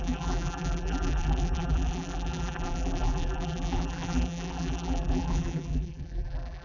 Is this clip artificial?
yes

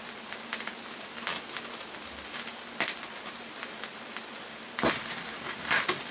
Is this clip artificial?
no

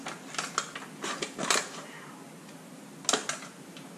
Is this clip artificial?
no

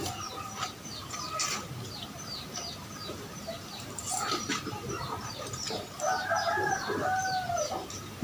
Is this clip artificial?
yes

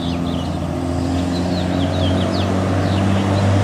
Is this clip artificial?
no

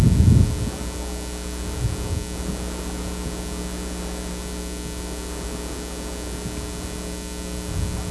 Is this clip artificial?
no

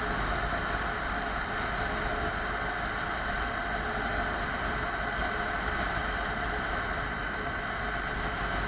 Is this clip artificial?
no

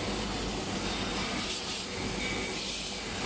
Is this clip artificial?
no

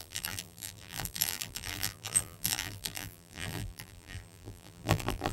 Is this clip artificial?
yes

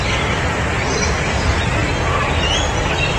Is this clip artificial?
yes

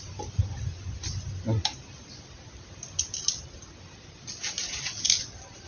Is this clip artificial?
no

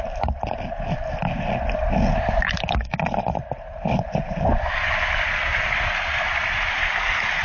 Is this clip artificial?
no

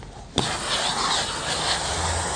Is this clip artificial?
no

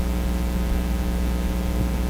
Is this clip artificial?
no